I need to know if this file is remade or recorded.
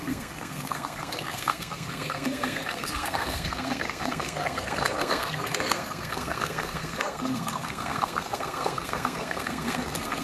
remade